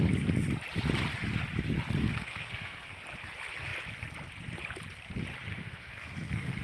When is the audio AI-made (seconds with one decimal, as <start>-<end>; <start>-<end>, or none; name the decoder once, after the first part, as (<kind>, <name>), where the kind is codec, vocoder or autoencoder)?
2.0-3.0 (codec, SNAC); 5.5-6.6